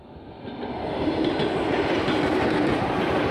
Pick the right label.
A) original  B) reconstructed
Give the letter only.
A